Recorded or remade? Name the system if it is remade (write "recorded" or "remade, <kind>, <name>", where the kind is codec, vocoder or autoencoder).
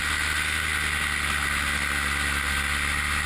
recorded